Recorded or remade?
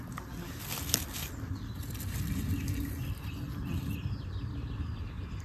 recorded